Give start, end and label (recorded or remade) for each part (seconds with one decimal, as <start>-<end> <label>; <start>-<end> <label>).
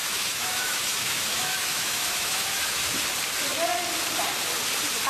0.0-2.9 remade; 2.9-5.1 recorded